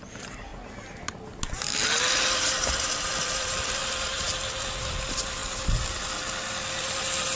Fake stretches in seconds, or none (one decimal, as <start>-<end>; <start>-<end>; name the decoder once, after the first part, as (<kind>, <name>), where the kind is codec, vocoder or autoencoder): 0.0-0.5 (vocoder, BigVGAN v2); 2.1-5.4